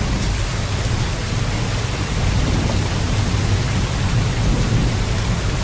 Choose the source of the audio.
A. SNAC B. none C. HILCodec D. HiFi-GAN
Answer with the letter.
B